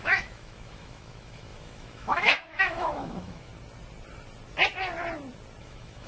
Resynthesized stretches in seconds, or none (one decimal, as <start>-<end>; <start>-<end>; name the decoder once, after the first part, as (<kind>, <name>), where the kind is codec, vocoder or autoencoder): 0.0-3.5 (autoencoder, DAC-VAE); 5.6-6.1